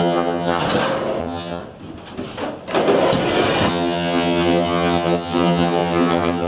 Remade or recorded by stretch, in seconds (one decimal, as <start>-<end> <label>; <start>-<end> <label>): 0.0-0.6 remade; 0.6-1.2 recorded; 1.2-1.6 remade; 1.6-3.7 recorded; 3.7-6.5 remade